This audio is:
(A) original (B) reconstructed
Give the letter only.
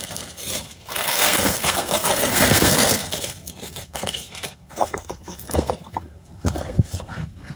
B